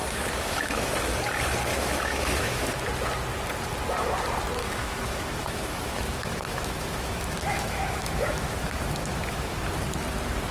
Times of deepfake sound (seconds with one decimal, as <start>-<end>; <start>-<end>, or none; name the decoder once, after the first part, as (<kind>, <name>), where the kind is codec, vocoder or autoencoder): 0.0-0.9 (autoencoder, DAC-VAE); 1.7-2.9; 4.6-9.7